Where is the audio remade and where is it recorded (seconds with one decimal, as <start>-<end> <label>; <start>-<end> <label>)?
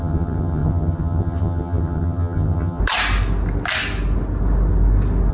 0.0-2.8 remade; 2.8-5.3 recorded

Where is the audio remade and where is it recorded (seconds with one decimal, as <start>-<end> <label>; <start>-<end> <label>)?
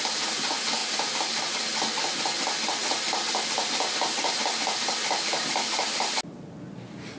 0.0-7.2 recorded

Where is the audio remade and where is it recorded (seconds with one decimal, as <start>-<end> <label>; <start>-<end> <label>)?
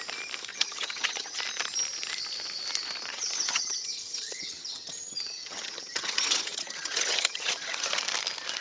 0.0-0.5 recorded; 0.5-1.4 remade; 1.4-3.1 recorded; 3.1-8.0 remade; 8.0-8.6 recorded